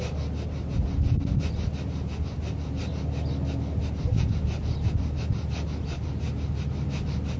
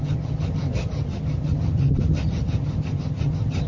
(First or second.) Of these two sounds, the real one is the first